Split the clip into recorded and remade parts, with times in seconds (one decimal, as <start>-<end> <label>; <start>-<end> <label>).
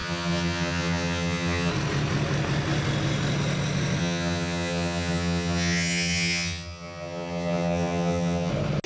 0.0-1.7 remade; 1.7-4.0 recorded; 4.0-8.5 remade; 8.5-8.9 recorded